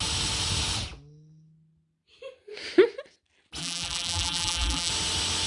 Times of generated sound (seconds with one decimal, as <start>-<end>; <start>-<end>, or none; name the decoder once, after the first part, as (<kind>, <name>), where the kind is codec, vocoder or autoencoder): 3.6-4.9 (vocoder, BigVGAN v2)